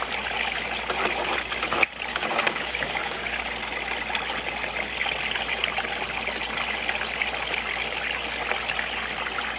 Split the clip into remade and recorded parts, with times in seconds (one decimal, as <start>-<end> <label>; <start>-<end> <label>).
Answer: 0.0-2.1 recorded; 2.1-3.5 remade; 3.5-9.6 recorded